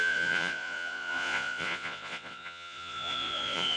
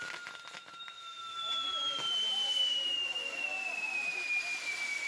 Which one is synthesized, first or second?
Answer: first